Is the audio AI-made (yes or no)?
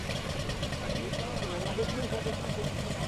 yes